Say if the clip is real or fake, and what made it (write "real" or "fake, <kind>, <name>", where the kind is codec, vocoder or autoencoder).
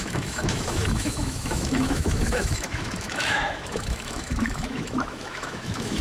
fake, autoencoder, DAC-VAE